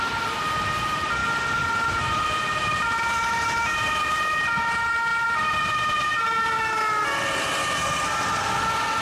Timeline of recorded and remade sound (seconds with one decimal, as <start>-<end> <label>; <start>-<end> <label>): 0.0-9.0 recorded